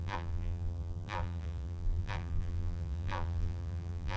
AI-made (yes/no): yes